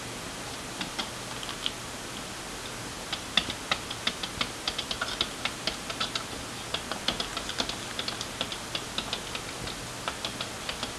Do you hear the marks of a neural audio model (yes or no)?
no